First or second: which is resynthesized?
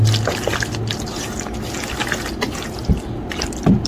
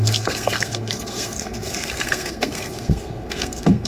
second